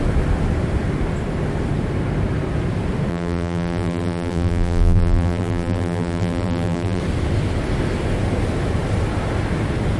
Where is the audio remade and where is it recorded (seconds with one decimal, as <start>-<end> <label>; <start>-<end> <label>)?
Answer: 0.0-3.1 recorded; 3.1-7.0 remade; 7.0-10.0 recorded